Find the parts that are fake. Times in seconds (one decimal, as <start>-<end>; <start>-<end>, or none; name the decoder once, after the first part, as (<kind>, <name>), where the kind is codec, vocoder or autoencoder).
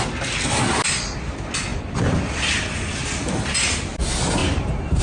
4.4-5.0 (vocoder, BigVGAN v2)